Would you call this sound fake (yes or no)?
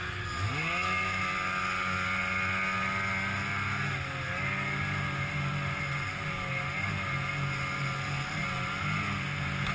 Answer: no